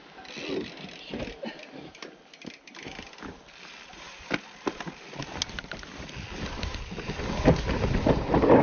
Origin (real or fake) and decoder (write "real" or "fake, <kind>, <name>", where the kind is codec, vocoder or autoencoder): real